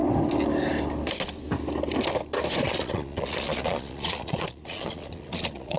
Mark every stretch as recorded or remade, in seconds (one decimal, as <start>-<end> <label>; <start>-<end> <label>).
0.0-2.7 recorded; 2.7-5.8 remade